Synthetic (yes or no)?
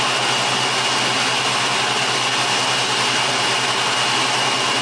no